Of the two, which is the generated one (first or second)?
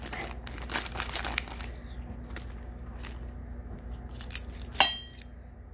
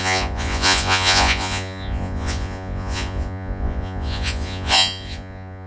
second